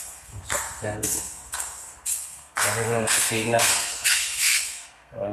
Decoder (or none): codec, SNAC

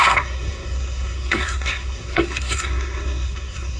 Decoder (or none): codec, SNAC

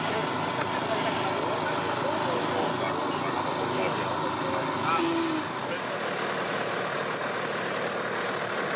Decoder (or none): none